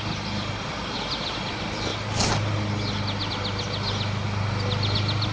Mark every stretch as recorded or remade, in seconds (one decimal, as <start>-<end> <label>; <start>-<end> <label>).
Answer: 0.0-5.3 recorded